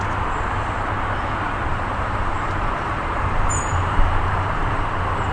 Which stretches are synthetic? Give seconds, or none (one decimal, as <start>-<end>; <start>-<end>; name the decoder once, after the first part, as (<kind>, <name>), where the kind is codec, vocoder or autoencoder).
1.7-5.3 (vocoder, BigVGAN v2)